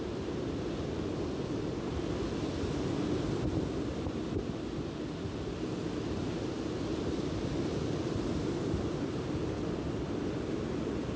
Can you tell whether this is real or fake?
real